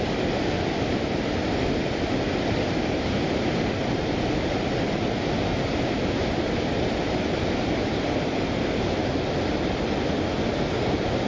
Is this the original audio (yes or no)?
yes